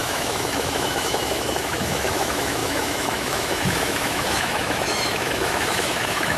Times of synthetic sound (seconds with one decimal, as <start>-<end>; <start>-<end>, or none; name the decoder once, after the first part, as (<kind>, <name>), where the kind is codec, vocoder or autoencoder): 0.0-6.4 (autoencoder, DAC-VAE)